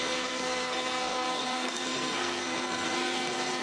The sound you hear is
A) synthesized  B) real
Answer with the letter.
A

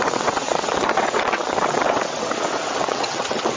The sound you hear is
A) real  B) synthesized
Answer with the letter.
B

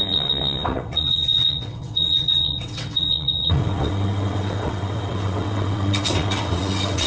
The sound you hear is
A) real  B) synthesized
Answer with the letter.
B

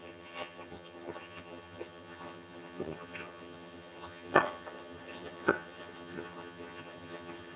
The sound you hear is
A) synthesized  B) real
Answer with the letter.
A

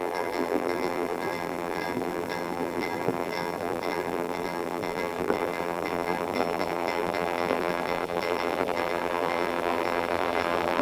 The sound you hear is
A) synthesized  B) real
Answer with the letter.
A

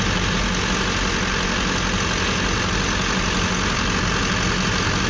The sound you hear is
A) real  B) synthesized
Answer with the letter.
A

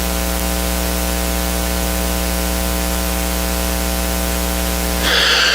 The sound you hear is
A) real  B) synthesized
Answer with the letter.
A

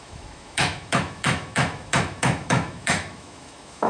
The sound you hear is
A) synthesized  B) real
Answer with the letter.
A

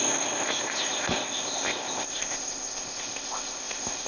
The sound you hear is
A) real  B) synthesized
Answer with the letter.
B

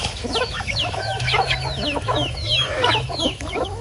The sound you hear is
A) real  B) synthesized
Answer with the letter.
B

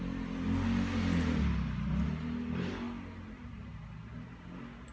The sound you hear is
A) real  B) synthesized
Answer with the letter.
A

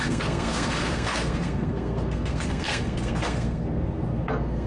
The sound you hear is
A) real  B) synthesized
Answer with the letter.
B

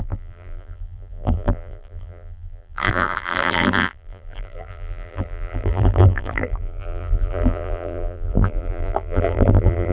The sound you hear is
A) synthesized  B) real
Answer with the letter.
A